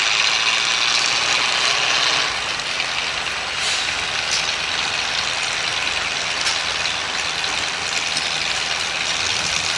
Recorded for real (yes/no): yes